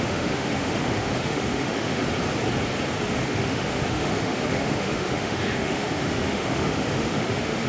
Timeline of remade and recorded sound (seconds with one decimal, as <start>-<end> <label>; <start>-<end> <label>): 0.0-2.0 remade; 2.0-2.9 recorded; 2.9-7.7 remade